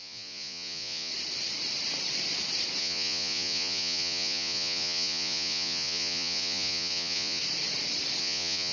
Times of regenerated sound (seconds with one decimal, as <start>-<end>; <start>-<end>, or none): 0.0-1.1; 2.8-7.4; 8.2-8.7